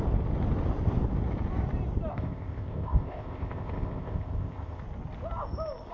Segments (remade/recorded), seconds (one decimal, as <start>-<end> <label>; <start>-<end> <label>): 0.0-2.1 recorded; 2.1-4.8 remade; 4.8-5.9 recorded